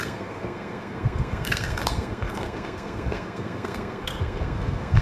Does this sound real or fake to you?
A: fake